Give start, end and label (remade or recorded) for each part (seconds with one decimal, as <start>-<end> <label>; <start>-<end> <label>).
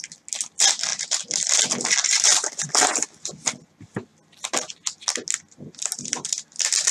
0.0-6.9 recorded